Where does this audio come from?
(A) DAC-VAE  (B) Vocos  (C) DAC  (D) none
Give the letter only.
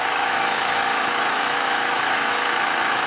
A